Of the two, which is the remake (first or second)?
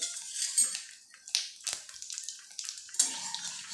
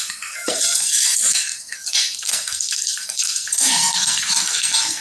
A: second